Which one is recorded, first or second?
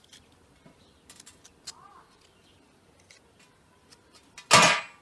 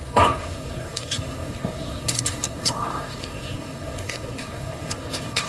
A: first